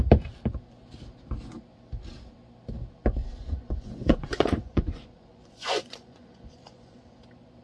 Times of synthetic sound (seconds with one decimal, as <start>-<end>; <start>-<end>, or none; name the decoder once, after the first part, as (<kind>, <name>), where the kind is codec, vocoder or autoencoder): 3.2-7.0 (vocoder, Vocos)